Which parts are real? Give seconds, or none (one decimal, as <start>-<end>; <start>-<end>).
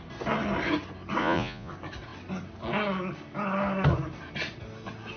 0.0-1.2; 1.7-5.2